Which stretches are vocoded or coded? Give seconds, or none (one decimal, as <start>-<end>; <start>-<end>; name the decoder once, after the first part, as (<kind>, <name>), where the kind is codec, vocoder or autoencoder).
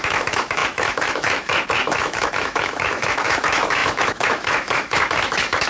0.0-5.7 (autoencoder, DAC-VAE)